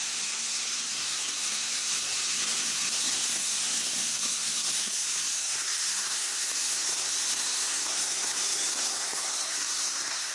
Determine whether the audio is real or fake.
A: fake